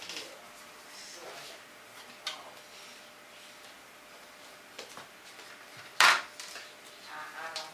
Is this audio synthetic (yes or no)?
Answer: no